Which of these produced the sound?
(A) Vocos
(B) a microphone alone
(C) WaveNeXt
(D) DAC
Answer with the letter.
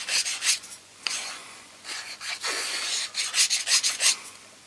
A